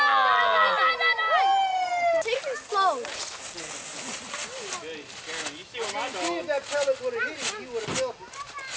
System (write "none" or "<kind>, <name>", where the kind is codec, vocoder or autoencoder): none